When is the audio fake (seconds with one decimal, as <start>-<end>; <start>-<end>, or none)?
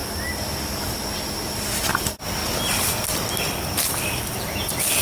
none